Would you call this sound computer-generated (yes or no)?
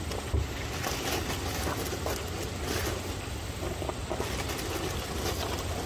no